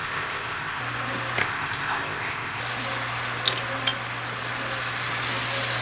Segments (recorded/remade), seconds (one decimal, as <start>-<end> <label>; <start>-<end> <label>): 0.0-0.8 remade; 0.8-1.4 recorded; 1.4-2.6 remade; 2.6-5.8 recorded